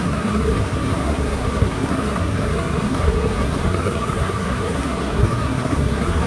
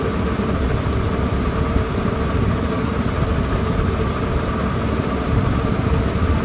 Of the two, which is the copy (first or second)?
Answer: first